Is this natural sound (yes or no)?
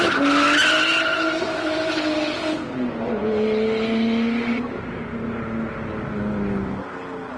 yes